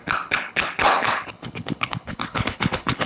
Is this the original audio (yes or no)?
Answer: no